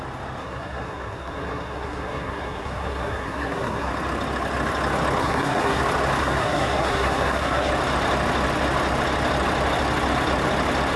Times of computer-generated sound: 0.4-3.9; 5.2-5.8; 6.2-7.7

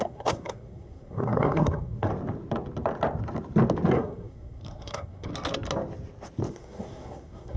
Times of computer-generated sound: 0.0-2.1; 3.9-5.3; 6.5-7.6

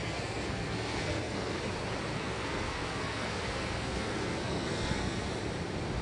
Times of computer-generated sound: 0.0-1.6; 2.1-5.3

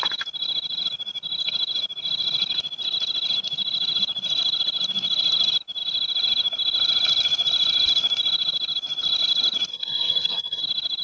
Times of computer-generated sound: 9.7-10.6

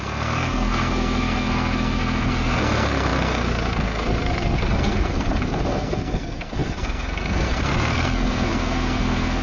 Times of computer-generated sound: 0.0-9.4

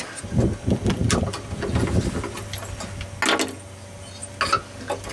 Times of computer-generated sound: none